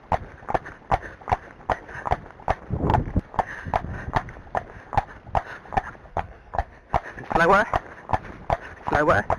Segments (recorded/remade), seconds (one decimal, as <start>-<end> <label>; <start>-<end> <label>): 0.0-6.1 recorded; 6.1-6.9 remade; 6.9-9.4 recorded